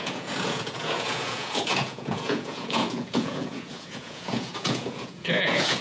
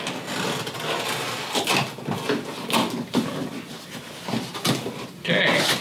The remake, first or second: first